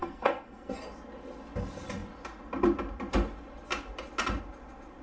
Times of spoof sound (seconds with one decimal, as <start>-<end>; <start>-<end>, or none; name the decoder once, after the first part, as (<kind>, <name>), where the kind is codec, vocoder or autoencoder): 0.0-0.8 (codec, SNAC)